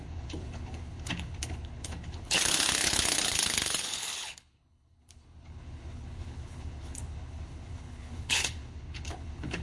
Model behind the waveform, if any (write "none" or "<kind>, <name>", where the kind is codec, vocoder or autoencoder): codec, HILCodec